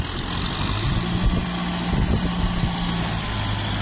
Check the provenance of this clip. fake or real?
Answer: real